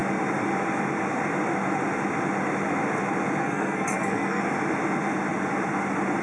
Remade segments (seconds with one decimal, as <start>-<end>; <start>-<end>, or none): 3.4-4.4